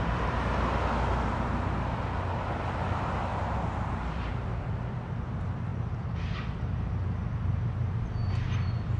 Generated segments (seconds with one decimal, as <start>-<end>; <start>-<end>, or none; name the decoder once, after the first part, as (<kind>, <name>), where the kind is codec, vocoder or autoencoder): 3.3-4.7 (vocoder, BigVGAN v2); 5.7-6.2